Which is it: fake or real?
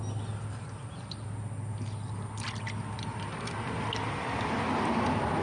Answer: real